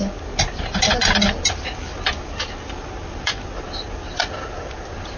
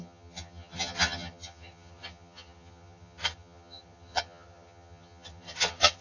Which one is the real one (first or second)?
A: first